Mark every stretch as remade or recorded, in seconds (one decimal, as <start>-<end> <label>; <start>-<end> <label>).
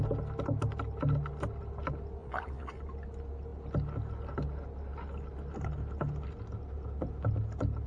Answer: 0.0-2.2 recorded; 2.2-2.8 remade; 2.8-7.9 recorded